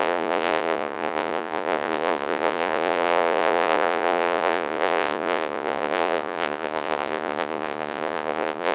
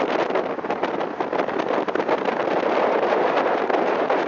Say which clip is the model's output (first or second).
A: first